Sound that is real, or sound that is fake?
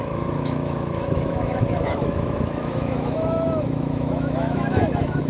fake